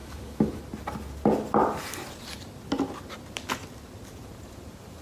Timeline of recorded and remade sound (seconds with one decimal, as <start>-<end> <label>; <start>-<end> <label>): 0.0-0.6 remade; 0.6-5.0 recorded